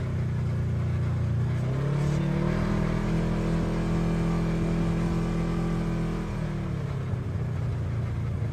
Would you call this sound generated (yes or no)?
no